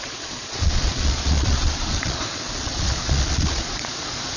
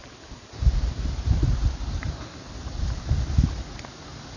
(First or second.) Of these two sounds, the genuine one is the second